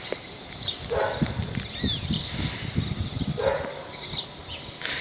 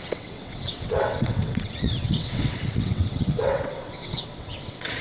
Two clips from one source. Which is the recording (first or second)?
first